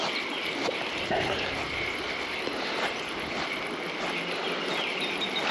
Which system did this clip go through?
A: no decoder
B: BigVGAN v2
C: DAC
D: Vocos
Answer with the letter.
A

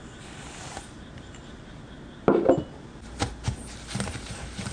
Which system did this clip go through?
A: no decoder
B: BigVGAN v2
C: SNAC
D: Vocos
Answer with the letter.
A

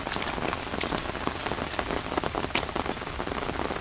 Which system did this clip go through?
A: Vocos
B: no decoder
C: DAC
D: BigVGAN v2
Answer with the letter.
B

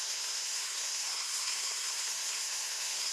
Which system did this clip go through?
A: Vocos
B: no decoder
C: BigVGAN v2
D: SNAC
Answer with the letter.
D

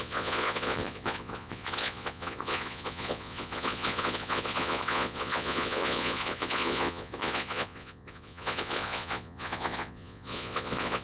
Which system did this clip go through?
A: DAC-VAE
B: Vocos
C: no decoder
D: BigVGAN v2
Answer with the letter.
B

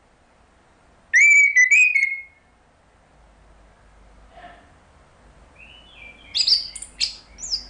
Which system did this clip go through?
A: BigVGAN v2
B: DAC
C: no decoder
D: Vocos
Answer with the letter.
C